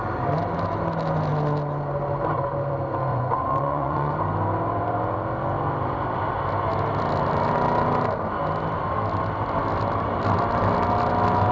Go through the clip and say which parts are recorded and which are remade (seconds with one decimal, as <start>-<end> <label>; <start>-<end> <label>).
0.0-3.1 recorded; 3.1-4.1 remade; 4.1-11.5 recorded